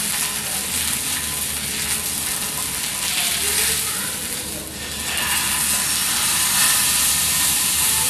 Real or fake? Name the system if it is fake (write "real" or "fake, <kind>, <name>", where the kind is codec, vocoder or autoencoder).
real